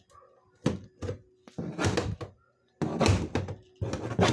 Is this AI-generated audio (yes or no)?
no